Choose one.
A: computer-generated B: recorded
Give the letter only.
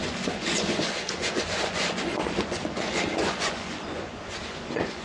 A